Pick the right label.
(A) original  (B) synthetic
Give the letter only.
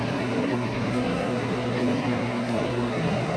B